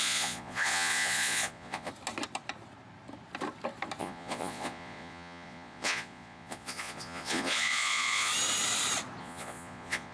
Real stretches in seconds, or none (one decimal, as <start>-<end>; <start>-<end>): 1.9-4.0; 8.3-9.2